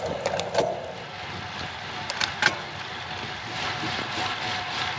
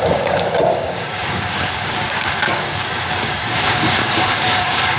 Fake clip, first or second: second